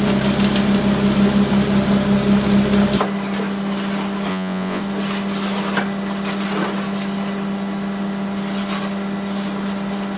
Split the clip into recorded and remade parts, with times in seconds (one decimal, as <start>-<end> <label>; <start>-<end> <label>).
0.0-4.3 recorded; 4.3-4.8 remade; 4.8-10.2 recorded

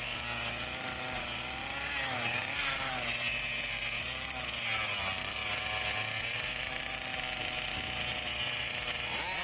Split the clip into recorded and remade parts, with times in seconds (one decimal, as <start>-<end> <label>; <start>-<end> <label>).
0.0-9.4 recorded

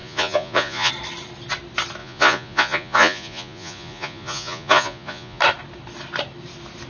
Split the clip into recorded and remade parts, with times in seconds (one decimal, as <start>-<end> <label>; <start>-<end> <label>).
0.0-0.9 remade; 0.9-2.0 recorded; 2.0-5.4 remade; 5.4-6.9 recorded

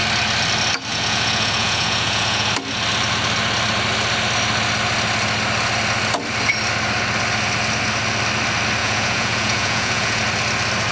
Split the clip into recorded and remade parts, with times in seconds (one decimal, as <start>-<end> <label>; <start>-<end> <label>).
0.0-0.9 recorded; 0.9-2.5 remade; 2.5-8.8 recorded; 8.8-10.2 remade; 10.2-10.9 recorded

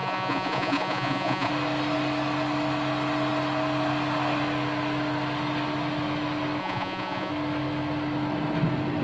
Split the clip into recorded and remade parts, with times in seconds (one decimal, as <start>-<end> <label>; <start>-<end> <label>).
0.0-1.5 remade; 1.5-6.6 recorded; 6.6-7.3 remade; 7.3-9.0 recorded

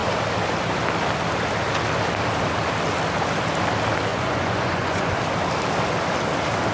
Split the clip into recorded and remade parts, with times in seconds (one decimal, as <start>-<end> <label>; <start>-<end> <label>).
0.0-4.1 recorded; 4.1-5.1 remade; 5.1-6.7 recorded

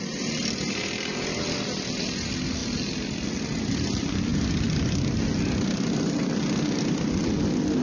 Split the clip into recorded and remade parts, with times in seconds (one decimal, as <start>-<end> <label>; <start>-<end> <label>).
0.0-7.8 recorded

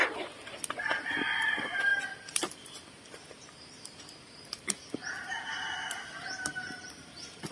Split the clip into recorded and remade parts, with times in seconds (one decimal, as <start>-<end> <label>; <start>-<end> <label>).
0.0-7.5 recorded